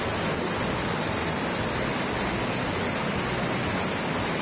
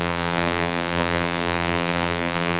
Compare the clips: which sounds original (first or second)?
first